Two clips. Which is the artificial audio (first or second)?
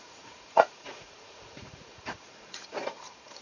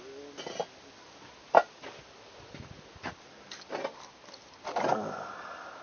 first